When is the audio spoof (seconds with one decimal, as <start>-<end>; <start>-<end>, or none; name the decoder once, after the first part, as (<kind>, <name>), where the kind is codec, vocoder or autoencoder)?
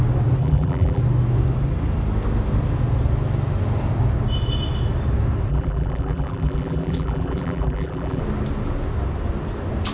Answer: 0.4-1.0 (vocoder, BigVGAN v2); 5.5-8.2